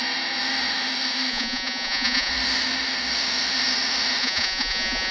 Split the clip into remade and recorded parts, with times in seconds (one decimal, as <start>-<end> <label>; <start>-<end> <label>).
0.0-1.3 recorded; 1.3-2.3 remade; 2.3-4.2 recorded; 4.2-5.1 remade